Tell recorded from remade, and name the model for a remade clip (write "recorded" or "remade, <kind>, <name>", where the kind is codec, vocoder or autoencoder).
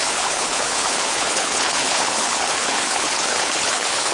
remade, codec, HILCodec